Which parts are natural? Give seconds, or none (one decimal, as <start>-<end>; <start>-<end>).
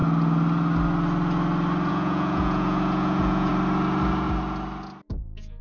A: 0.0-1.9; 3.5-5.1